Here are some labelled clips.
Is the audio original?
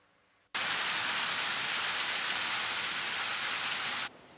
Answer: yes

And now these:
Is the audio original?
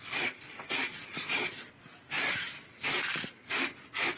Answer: no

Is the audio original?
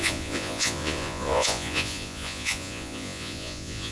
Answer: no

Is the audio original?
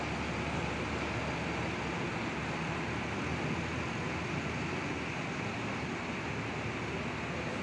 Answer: yes